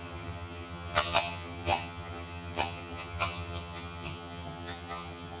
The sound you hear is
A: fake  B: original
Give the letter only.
A